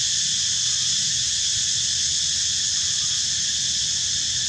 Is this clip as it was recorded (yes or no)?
yes